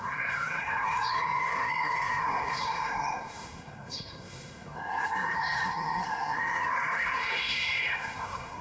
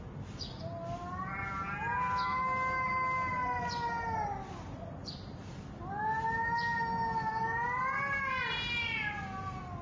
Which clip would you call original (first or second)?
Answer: second